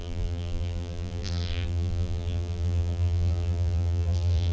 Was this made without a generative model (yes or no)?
no